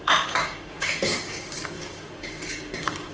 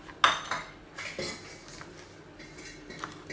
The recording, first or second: second